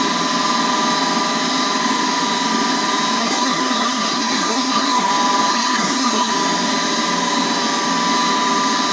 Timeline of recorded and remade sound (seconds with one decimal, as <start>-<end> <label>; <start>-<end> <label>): 0.0-3.2 recorded; 3.2-5.1 remade; 5.1-5.5 recorded; 5.5-6.3 remade; 6.3-8.9 recorded